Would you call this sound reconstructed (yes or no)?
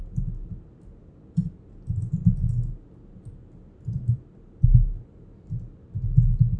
no